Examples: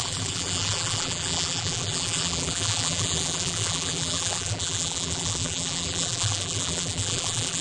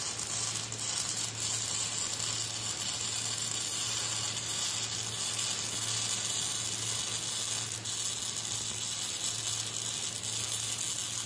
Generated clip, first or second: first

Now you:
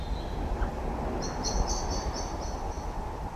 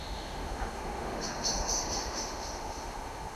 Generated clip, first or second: second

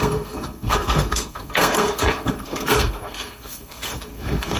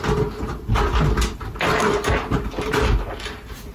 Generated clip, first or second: first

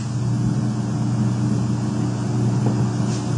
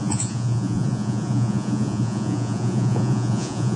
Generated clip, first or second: second